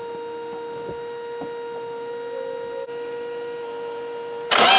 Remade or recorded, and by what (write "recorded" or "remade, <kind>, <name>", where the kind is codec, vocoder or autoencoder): recorded